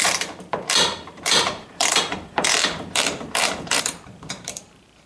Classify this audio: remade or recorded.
remade